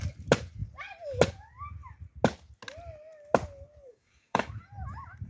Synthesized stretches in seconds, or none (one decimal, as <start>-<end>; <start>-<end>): 3.9-4.5